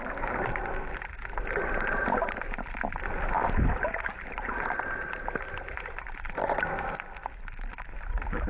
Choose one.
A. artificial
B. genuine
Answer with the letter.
B